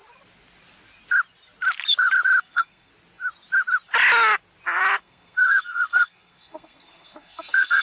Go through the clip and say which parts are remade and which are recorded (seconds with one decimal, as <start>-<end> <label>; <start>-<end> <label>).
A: 0.0-2.4 recorded; 2.4-2.9 remade; 2.9-5.0 recorded; 5.0-7.8 remade

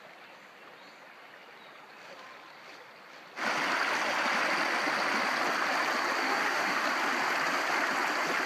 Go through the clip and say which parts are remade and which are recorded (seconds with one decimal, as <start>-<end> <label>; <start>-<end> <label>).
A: 0.0-6.2 recorded; 6.2-6.8 remade; 6.8-8.5 recorded